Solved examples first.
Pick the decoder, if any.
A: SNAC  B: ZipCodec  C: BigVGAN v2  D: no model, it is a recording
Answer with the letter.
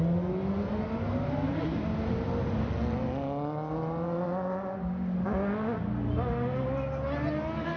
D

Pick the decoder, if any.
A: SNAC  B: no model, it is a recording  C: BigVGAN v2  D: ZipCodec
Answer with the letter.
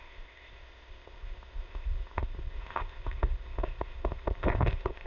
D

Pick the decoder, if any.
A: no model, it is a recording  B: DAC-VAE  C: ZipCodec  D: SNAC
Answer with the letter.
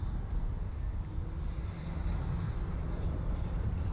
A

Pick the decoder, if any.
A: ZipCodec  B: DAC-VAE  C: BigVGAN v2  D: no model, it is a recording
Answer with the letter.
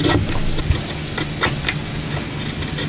D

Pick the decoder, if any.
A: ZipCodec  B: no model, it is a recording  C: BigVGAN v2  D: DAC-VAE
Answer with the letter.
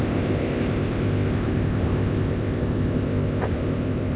A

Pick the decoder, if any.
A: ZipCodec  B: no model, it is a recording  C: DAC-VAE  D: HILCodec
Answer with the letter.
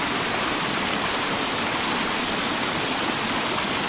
B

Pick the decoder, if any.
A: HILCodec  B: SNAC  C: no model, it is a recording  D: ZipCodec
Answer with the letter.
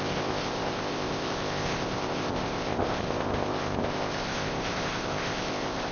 D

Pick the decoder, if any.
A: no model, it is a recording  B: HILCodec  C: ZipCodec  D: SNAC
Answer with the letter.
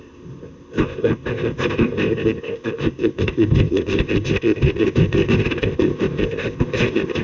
C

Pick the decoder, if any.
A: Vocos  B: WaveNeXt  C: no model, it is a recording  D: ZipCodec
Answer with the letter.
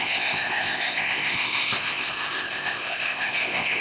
D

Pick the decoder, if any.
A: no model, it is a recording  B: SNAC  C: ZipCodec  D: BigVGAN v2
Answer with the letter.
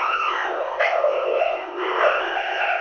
C